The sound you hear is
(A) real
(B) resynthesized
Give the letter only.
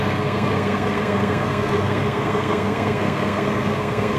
B